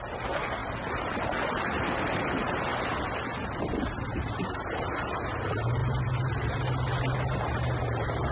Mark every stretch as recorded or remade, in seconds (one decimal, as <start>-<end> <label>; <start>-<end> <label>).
0.0-8.3 recorded